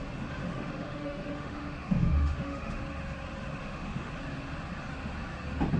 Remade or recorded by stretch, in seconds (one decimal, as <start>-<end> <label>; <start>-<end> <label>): 0.0-0.4 recorded; 0.4-2.8 remade; 2.8-3.6 recorded; 3.6-4.1 remade; 4.1-5.8 recorded